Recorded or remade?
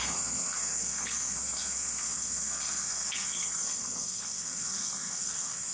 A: remade